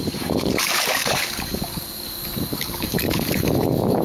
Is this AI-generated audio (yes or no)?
yes